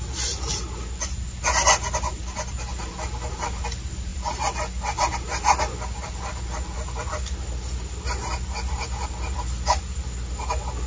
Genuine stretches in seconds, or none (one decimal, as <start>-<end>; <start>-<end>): 0.0-10.9